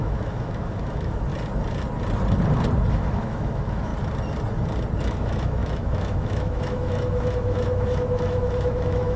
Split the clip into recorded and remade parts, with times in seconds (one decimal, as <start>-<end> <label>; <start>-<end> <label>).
0.0-1.3 remade; 1.3-2.9 recorded; 2.9-3.9 remade; 3.9-5.0 recorded; 5.0-9.2 remade